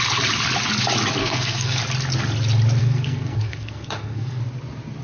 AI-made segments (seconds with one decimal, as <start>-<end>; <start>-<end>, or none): 1.2-1.8; 2.8-4.4